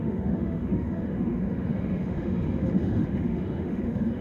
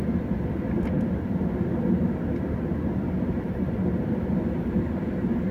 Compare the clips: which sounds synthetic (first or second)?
first